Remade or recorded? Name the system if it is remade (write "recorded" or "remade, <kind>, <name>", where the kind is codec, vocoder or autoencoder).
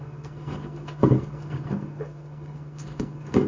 remade, codec, SNAC